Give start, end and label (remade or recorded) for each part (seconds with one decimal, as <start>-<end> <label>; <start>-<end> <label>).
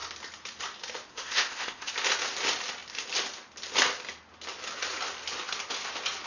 0.0-1.1 recorded; 1.1-1.9 remade; 1.9-6.3 recorded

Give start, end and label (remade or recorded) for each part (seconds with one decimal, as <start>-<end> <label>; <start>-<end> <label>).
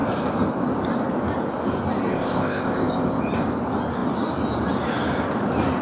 0.0-2.1 recorded; 2.1-3.2 remade; 3.2-5.8 recorded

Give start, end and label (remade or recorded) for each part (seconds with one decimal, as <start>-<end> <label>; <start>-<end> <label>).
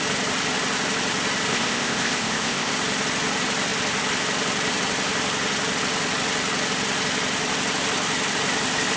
0.0-1.5 recorded; 1.5-2.7 remade; 2.7-9.0 recorded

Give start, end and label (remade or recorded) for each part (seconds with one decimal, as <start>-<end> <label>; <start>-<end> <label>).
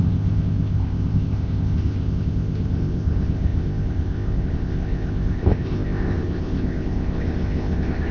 0.0-8.1 remade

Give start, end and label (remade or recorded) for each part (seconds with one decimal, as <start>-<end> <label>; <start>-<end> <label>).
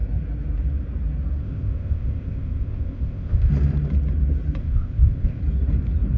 0.0-1.4 recorded; 1.4-3.5 remade; 3.5-4.6 recorded; 4.6-5.4 remade; 5.4-6.2 recorded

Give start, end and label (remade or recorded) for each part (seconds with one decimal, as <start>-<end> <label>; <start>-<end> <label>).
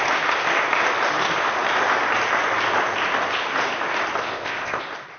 0.0-4.2 recorded; 4.2-4.8 remade; 4.8-5.2 recorded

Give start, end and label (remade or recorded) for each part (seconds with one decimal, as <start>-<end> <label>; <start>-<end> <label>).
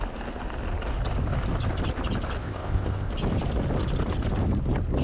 0.0-2.4 recorded; 2.4-3.1 remade; 3.1-5.0 recorded